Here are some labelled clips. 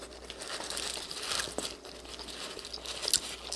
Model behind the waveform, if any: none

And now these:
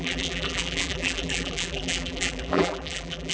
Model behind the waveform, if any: vocoder, BigVGAN v2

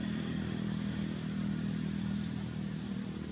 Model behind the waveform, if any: vocoder, BigVGAN v2